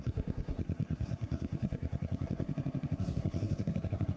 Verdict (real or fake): fake